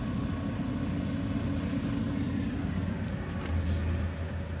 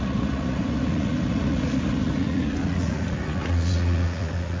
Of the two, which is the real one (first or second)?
first